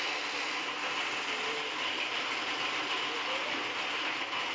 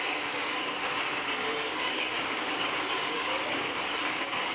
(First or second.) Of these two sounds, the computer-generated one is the second